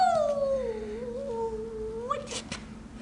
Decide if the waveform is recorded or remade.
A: recorded